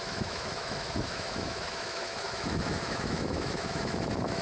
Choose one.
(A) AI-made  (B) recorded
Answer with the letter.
A